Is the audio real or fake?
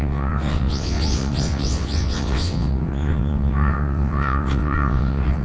fake